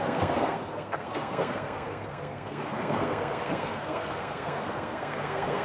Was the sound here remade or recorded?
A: remade